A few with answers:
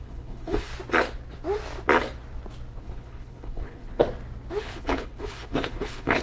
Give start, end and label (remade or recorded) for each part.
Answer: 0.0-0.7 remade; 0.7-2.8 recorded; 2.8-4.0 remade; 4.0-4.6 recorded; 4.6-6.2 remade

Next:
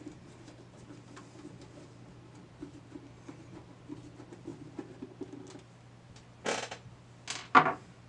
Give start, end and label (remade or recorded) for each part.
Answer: 0.0-8.1 recorded

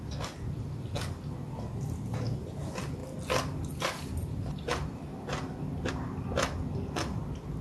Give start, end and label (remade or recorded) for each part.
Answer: 0.0-7.6 recorded